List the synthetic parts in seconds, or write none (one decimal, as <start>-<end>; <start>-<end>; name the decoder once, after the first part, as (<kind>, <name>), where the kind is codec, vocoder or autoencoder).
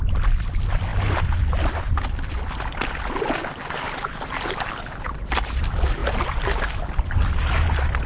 none